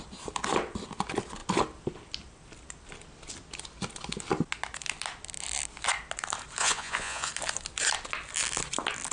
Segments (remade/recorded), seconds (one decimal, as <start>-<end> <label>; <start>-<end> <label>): 0.0-6.6 recorded; 6.6-7.3 remade; 7.3-9.1 recorded